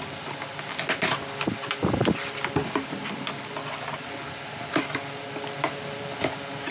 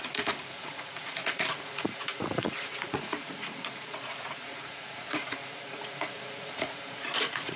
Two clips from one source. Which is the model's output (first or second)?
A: second